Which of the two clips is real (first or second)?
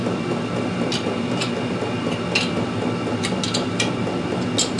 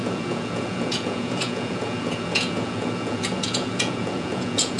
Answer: first